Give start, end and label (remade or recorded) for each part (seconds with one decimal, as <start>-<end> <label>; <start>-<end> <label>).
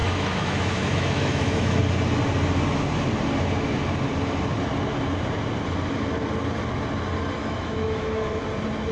0.0-1.8 remade; 1.8-7.4 recorded; 7.4-8.4 remade; 8.4-8.9 recorded